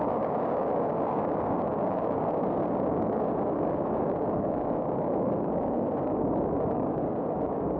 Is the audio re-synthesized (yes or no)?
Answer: yes